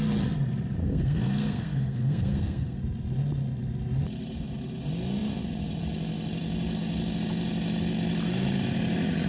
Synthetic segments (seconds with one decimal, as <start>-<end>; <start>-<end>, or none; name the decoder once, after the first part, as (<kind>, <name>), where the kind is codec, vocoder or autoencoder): 0.8-2.8 (codec, SNAC)